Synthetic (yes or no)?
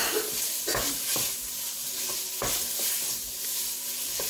no